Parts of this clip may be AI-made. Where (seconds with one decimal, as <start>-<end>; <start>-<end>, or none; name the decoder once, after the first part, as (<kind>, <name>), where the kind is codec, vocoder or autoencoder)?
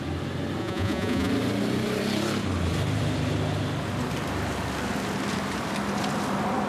0.6-1.3 (vocoder, Vocos)